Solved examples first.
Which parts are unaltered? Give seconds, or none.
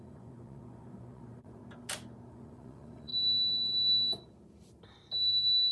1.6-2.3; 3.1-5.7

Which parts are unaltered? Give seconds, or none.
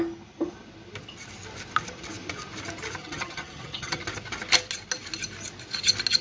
0.0-3.0; 4.0-6.2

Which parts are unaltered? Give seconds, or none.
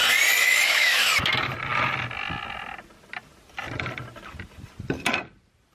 0.0-0.4; 1.1-5.7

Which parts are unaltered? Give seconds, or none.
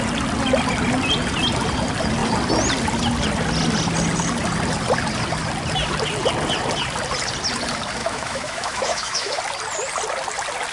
0.0-8.0; 9.4-10.7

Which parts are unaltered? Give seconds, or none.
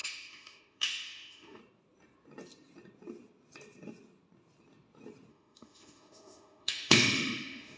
1.6-5.3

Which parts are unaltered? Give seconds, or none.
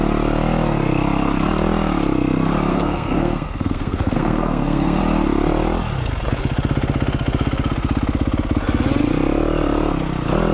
0.0-2.7; 5.0-10.5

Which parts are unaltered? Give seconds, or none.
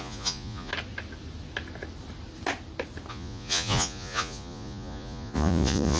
0.7-3.1